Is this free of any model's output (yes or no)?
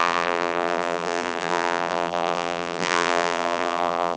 no